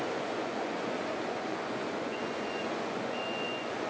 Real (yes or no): no